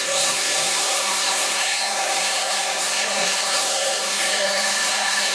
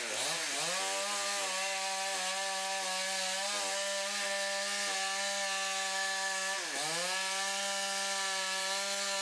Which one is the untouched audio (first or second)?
second